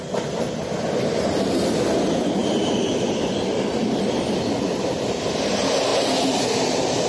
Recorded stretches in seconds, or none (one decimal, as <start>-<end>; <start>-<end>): 0.0-2.4; 5.5-5.9